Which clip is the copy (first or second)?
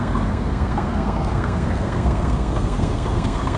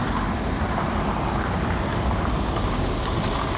first